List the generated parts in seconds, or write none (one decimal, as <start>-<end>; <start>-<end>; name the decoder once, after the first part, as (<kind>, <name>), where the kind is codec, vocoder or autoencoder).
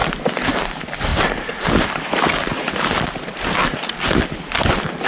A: none